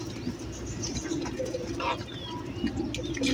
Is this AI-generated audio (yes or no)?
no